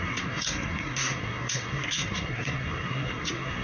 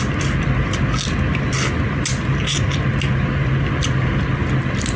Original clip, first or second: second